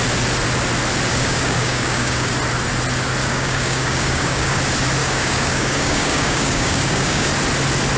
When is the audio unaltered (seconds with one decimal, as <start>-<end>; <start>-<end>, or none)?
0.0-1.1; 2.3-3.2; 4.6-5.0; 7.3-8.0